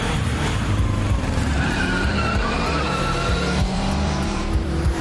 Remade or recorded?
remade